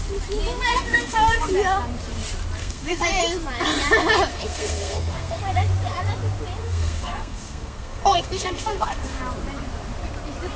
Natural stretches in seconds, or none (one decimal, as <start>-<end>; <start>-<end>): 0.0-0.7; 1.5-2.6; 3.2-4.3; 5.4-6.6; 9.2-10.6